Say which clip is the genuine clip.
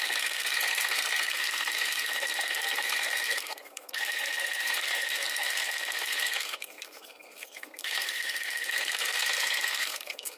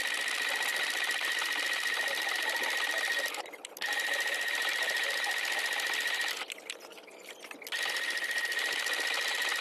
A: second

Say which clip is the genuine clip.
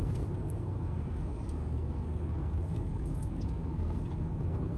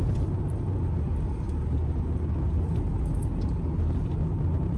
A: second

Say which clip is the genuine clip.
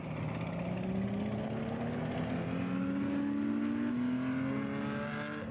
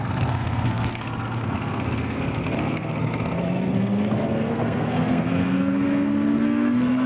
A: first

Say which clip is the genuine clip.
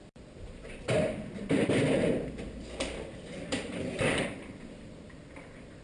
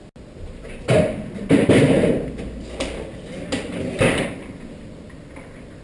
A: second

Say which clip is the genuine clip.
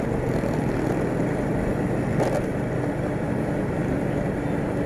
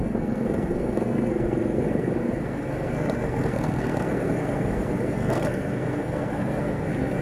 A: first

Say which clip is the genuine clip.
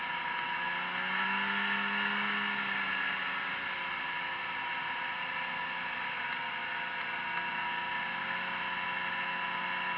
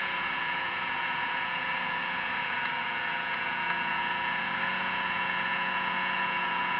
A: first